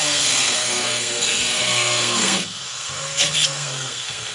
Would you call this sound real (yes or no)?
no